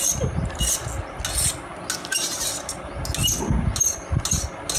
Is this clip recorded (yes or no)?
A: yes